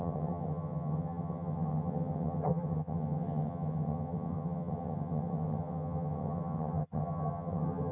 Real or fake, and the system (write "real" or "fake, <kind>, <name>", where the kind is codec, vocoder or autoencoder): fake, vocoder, HiFi-GAN